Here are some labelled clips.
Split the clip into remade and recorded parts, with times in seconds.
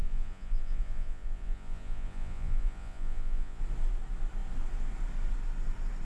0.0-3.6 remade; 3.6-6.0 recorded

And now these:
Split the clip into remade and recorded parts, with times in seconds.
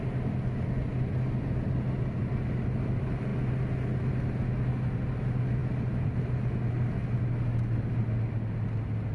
0.0-9.1 recorded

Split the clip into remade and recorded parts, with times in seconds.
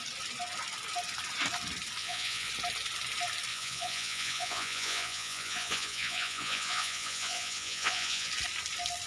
0.0-2.0 recorded; 2.0-2.5 remade; 2.5-3.5 recorded; 3.5-8.3 remade; 8.3-9.1 recorded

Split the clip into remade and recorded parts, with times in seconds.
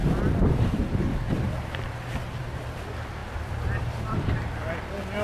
0.0-0.5 recorded; 0.5-5.2 remade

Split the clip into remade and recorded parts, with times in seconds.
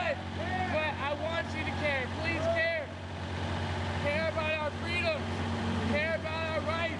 0.0-7.0 recorded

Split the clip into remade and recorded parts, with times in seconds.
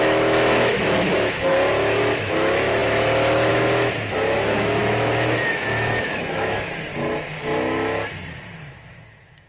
0.0-1.5 remade; 1.5-2.2 recorded; 2.2-6.9 remade; 6.9-8.6 recorded; 8.6-9.5 remade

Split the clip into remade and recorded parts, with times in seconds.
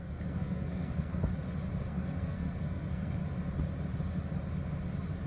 0.0-1.3 remade; 1.3-1.8 recorded; 1.8-3.2 remade; 3.2-5.3 recorded